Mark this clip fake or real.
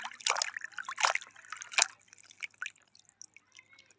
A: real